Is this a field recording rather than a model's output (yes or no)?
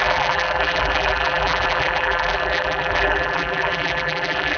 no